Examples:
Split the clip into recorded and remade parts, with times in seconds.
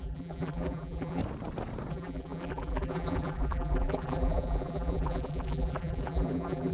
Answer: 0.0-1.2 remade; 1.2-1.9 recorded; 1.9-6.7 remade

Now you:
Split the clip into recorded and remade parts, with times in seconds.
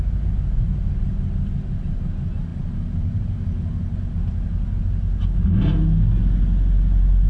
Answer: 0.0-7.3 recorded